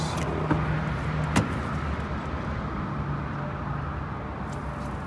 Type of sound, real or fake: real